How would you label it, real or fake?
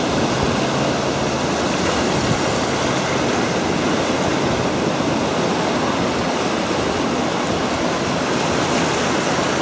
real